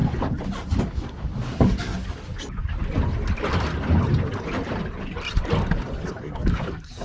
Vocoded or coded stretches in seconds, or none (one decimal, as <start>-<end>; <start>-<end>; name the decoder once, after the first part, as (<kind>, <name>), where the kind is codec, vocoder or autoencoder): 0.8-1.9 (codec, DAC); 6.1-7.0